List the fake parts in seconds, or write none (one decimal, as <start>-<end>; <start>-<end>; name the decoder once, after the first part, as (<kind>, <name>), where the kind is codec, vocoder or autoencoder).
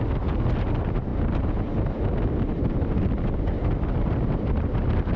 none